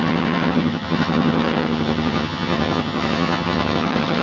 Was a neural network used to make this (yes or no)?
yes